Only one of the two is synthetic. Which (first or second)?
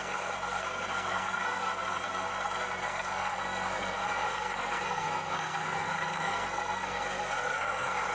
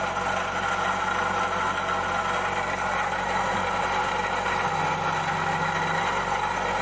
first